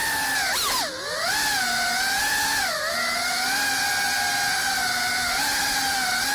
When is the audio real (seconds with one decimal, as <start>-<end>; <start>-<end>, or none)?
0.0-6.3